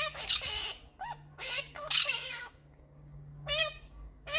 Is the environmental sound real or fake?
fake